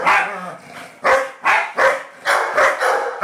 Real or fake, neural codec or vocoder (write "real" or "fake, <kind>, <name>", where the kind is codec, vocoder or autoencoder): real